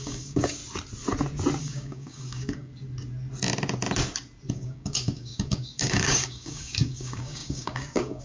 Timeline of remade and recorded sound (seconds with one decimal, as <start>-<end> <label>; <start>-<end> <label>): 0.0-0.6 remade; 0.6-1.6 recorded; 1.6-2.7 remade; 2.7-4.5 recorded; 4.5-8.2 remade